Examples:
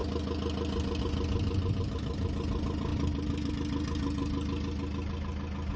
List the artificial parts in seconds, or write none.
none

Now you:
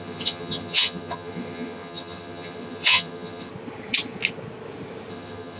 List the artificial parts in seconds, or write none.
0.0-3.5 (vocoder, HiFi-GAN); 5.1-5.6

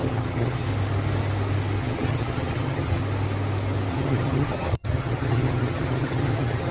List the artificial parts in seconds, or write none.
0.0-0.7 (vocoder, HiFi-GAN); 1.8-3.0; 3.9-6.7

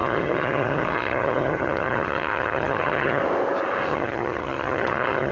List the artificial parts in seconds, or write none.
0.0-3.2 (vocoder, HiFi-GAN); 3.9-5.3